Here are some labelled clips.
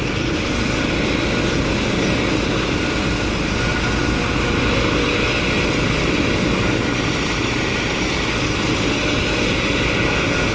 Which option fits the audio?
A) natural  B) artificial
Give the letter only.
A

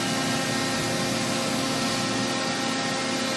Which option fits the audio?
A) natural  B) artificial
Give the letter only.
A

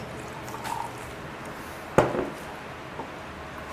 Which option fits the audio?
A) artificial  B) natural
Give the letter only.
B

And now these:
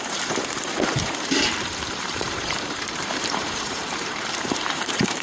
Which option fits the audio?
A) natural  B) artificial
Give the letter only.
B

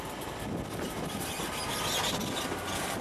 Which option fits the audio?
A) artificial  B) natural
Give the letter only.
B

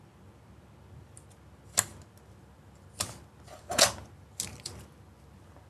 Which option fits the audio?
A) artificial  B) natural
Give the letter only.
B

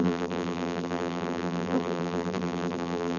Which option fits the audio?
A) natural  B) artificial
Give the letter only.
B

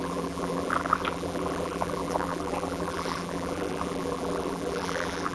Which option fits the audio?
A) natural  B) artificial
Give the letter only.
B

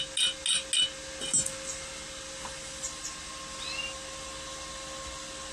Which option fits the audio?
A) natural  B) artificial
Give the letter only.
A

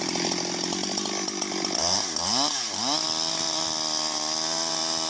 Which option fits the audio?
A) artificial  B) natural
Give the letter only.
B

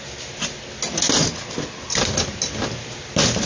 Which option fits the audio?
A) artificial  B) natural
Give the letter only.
B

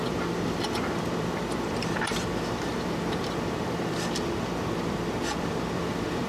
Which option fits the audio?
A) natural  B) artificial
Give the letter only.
B